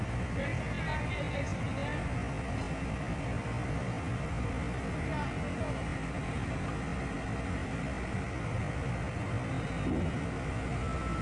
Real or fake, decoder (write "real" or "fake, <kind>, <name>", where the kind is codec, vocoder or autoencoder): real